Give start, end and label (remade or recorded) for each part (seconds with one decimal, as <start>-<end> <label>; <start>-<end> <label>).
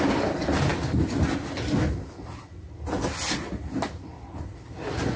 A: 0.0-5.2 recorded